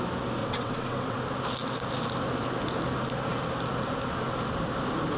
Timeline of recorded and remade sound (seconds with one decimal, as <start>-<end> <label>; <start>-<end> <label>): 0.0-0.4 recorded; 0.4-1.2 remade; 1.2-5.2 recorded